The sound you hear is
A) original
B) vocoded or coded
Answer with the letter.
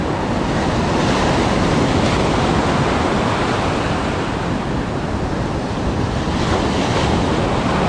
A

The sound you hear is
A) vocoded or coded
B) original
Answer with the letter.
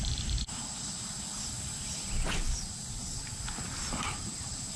B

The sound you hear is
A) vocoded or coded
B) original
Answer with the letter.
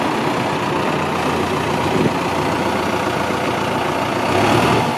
B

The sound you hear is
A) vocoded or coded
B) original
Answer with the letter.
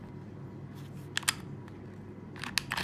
B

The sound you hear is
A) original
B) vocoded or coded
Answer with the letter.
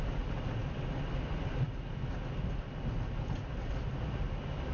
A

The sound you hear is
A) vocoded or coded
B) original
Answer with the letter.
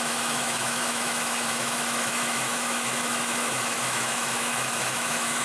A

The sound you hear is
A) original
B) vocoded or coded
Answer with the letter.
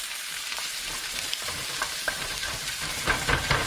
B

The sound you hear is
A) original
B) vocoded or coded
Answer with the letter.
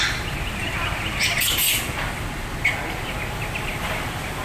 A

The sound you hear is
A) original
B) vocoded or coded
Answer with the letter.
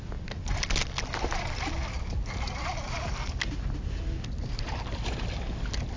A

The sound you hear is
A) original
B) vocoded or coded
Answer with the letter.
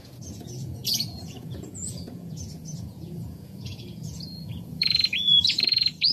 B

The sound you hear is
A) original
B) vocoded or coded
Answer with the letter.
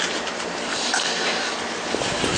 A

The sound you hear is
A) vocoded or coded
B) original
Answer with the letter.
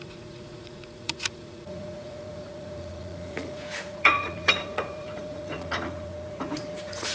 A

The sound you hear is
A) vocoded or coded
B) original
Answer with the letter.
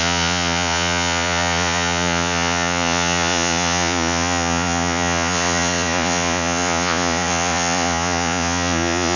A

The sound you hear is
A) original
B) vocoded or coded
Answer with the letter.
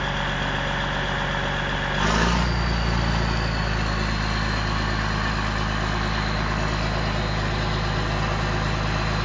A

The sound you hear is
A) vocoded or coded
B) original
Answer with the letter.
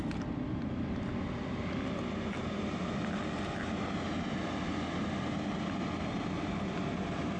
B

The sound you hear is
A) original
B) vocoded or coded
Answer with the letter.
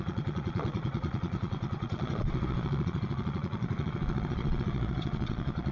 B